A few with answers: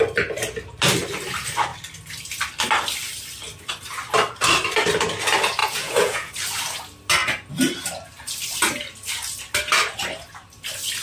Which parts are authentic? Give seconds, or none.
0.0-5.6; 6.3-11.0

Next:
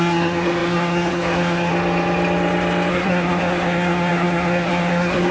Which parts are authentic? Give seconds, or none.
1.7-2.9

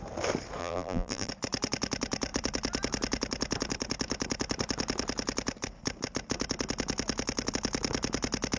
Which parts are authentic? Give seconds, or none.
0.0-0.6; 1.3-8.6

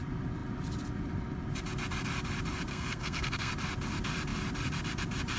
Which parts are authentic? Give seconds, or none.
0.0-2.7; 3.5-5.4

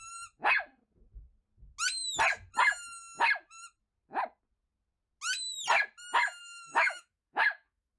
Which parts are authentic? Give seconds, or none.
0.0-6.4

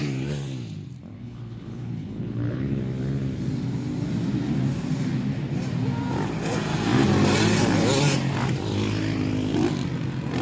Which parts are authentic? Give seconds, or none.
0.0-1.1; 2.8-10.4